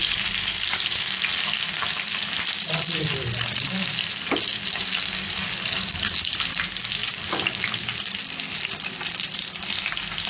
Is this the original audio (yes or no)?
yes